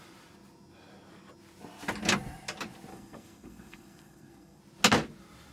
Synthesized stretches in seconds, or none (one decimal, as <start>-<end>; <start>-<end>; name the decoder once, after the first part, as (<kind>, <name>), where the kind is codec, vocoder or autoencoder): 2.9-4.6 (codec, SNAC)